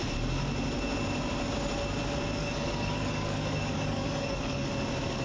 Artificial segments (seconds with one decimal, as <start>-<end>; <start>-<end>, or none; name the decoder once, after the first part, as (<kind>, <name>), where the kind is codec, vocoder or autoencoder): 2.4-4.7 (codec, DAC)